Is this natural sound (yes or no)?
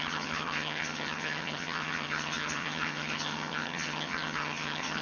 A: no